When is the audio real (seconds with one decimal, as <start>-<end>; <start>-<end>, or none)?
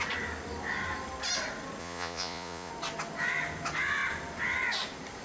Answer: 0.0-1.8; 2.7-5.2